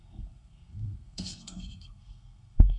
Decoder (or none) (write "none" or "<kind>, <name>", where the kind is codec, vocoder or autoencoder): codec, SNAC